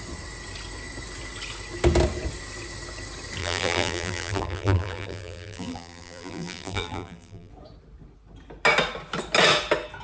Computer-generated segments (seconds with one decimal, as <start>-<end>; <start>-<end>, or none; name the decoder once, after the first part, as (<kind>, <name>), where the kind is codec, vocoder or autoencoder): 3.4-7.5 (vocoder, BigVGAN v2)